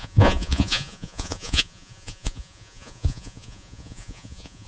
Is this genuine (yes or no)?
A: no